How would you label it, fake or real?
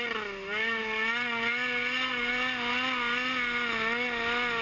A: real